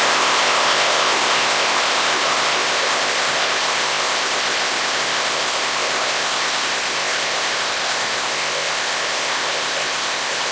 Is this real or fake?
fake